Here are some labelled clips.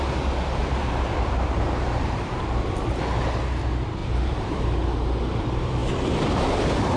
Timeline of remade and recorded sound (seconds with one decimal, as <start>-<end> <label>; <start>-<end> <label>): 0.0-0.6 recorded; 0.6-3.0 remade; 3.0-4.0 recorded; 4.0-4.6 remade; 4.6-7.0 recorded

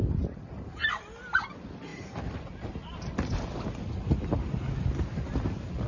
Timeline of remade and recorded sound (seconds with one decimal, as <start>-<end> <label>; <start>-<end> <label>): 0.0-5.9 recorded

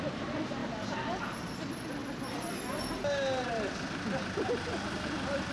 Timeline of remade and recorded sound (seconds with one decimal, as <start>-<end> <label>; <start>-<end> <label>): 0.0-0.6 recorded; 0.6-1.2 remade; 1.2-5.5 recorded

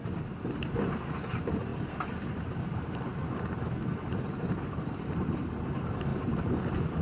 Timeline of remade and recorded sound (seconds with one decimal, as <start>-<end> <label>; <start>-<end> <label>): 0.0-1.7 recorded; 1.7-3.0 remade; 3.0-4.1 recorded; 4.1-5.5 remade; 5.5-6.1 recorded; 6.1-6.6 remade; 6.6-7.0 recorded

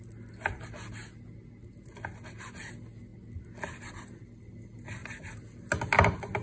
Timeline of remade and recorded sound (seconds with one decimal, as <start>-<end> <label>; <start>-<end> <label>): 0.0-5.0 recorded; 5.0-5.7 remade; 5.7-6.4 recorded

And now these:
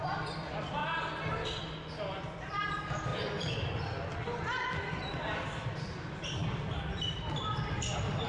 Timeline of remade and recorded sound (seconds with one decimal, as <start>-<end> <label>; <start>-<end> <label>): 0.0-0.8 remade; 0.8-2.2 recorded; 2.2-3.1 remade; 3.1-3.8 recorded; 3.8-8.3 remade

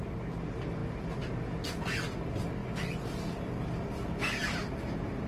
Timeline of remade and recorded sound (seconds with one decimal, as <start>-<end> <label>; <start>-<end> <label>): 0.0-2.6 recorded; 2.6-3.5 remade; 3.5-4.4 recorded; 4.4-5.3 remade